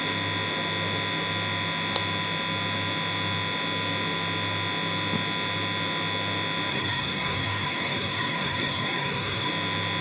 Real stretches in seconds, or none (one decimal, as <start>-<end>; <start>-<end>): 0.0-6.7; 9.5-10.0

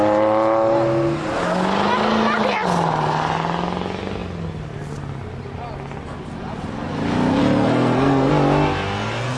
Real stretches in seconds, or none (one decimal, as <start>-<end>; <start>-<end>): 0.0-7.4; 8.3-9.4

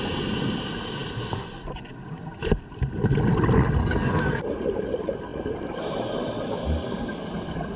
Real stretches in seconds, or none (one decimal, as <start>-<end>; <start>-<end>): 0.0-3.8; 4.4-7.8

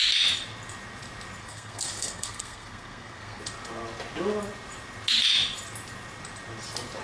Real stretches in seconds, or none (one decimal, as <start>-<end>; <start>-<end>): 0.0-1.4; 3.4-7.0

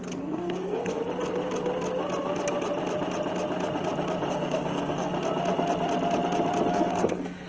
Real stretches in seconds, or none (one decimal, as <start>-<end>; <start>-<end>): 1.0-4.3; 5.1-6.7